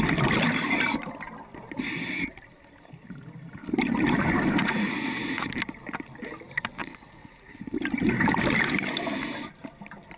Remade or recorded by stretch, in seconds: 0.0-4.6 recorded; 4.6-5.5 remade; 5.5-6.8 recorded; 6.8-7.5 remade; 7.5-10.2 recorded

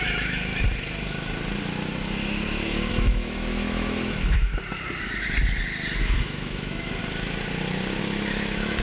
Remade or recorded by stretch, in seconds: 0.0-0.5 remade; 0.5-2.9 recorded; 2.9-4.5 remade; 4.5-6.0 recorded; 6.0-7.0 remade; 7.0-8.0 recorded; 8.0-8.8 remade

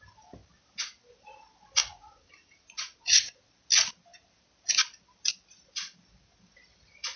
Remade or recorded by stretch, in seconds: 0.0-1.8 recorded; 1.8-3.5 remade; 3.5-7.2 recorded

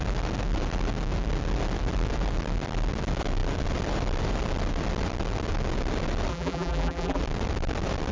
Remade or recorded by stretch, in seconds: 0.0-6.3 recorded; 6.3-7.2 remade; 7.2-8.1 recorded